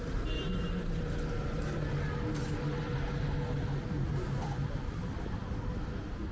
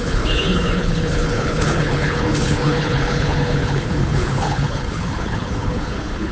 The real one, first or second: first